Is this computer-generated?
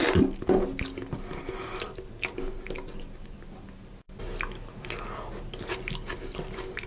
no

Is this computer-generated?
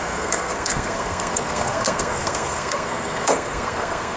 yes